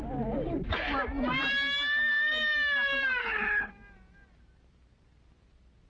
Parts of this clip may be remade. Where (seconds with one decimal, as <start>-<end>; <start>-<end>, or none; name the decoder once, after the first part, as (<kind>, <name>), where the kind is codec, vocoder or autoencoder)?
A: 3.2-3.7 (codec, HILCodec)